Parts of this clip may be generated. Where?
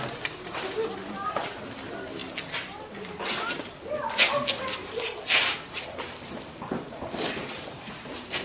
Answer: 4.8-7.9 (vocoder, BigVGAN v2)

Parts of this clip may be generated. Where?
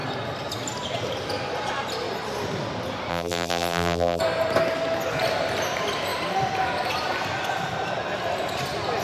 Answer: 3.1-4.2 (vocoder, BigVGAN v2)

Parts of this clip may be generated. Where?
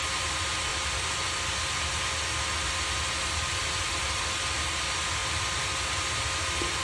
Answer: 5.2-5.9 (vocoder, BigVGAN v2)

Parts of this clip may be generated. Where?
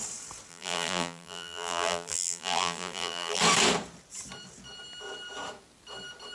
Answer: 0.5-3.4 (vocoder, BigVGAN v2)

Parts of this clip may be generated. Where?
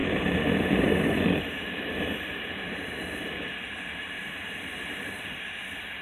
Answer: 0.0-4.2 (vocoder, BigVGAN v2); 4.9-6.0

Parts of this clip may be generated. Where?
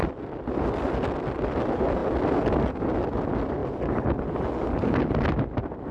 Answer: none